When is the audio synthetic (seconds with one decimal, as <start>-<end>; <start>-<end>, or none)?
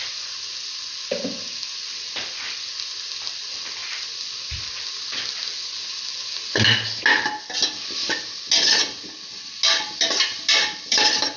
none